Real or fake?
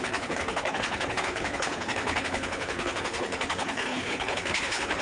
fake